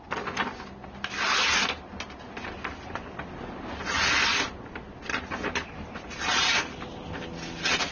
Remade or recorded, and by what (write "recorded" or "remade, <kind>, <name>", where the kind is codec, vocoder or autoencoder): recorded